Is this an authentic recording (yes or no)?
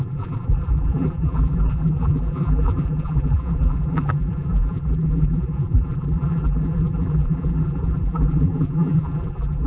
no